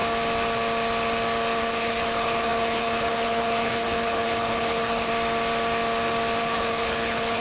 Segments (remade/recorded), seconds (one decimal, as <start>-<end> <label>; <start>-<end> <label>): 0.0-1.6 recorded; 1.6-5.1 remade; 5.1-6.4 recorded; 6.4-7.4 remade